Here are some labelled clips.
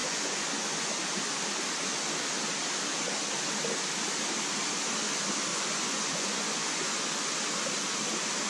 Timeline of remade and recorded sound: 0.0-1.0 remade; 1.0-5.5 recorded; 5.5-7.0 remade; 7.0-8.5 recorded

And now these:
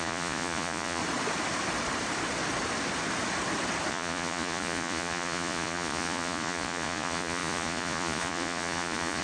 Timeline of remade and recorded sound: 0.0-1.0 remade; 1.0-3.9 recorded; 3.9-9.2 remade

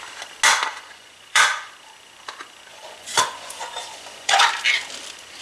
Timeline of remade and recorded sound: 0.0-0.7 recorded; 0.7-1.7 remade; 1.7-2.7 recorded; 2.7-4.4 remade; 4.4-5.4 recorded

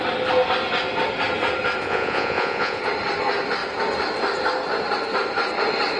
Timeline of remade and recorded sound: 0.0-1.8 recorded; 1.8-2.8 remade; 2.8-6.0 recorded

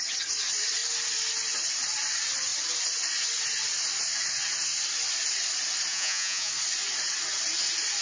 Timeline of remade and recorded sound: 0.0-5.9 recorded; 5.9-6.5 remade; 6.5-8.0 recorded

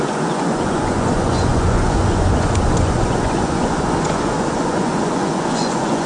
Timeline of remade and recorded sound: 0.0-6.1 remade